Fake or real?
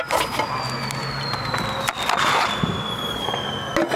real